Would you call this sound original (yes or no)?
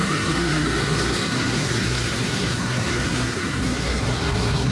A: no